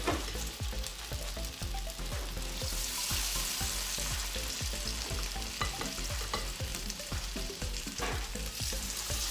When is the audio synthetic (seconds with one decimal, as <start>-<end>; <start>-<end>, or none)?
0.0-0.9; 2.7-3.1; 6.1-9.3